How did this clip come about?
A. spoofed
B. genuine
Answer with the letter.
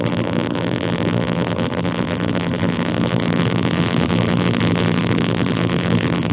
A